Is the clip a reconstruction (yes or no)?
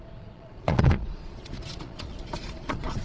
yes